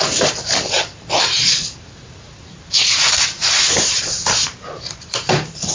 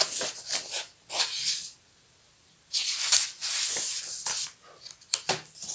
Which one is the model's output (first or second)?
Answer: first